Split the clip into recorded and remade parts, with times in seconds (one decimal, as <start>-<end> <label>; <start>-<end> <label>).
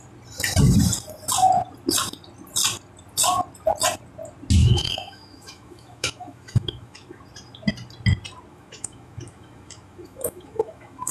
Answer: 0.0-4.6 recorded; 4.6-7.2 remade; 7.2-8.5 recorded; 8.5-11.1 remade